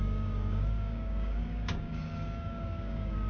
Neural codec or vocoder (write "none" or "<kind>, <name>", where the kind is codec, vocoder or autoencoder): codec, DAC